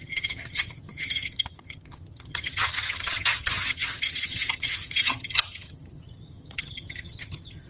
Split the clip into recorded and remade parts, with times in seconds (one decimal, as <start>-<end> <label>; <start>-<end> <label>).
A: 0.0-7.7 remade